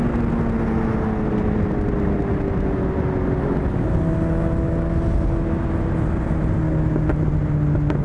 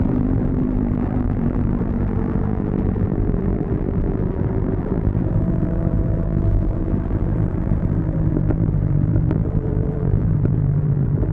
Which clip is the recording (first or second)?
first